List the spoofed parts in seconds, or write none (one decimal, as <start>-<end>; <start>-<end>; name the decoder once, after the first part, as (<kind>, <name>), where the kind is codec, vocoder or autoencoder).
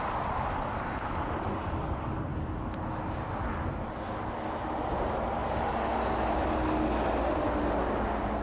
none